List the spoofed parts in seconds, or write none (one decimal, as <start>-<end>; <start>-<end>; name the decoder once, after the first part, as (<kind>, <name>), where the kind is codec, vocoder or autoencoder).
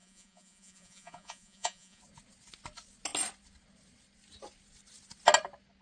0.0-2.0 (vocoder, Vocos)